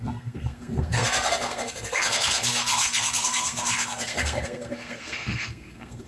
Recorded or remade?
remade